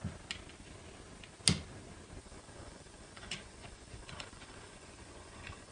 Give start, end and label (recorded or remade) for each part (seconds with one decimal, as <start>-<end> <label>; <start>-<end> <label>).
0.0-2.2 recorded; 2.2-5.7 remade

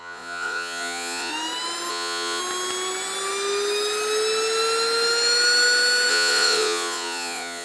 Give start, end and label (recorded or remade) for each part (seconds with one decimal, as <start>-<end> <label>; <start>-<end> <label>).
0.0-1.3 remade; 1.3-1.9 recorded; 1.9-2.4 remade; 2.4-6.1 recorded; 6.1-7.6 remade

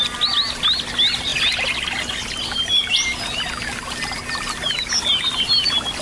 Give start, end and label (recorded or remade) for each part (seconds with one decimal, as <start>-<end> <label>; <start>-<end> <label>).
0.0-6.0 recorded

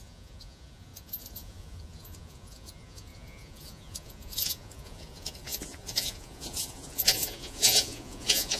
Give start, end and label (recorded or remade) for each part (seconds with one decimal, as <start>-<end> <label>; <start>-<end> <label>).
0.0-8.6 remade

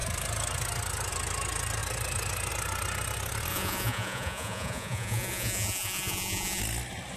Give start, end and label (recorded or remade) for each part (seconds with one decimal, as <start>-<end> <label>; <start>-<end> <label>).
0.0-3.5 recorded; 3.5-6.6 remade; 6.6-7.2 recorded

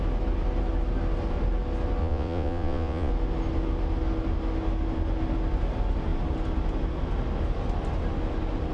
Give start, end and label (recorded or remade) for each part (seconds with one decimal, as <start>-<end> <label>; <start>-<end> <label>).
0.0-2.0 recorded; 2.0-3.1 remade; 3.1-8.7 recorded

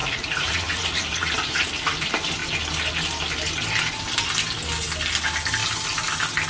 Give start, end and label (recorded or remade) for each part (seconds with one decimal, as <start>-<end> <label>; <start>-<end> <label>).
0.0-1.3 remade; 1.3-6.5 recorded

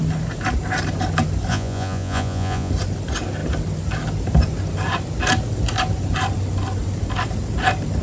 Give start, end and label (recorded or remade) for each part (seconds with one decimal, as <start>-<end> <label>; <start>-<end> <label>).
0.0-1.5 recorded; 1.5-2.7 remade; 2.7-8.0 recorded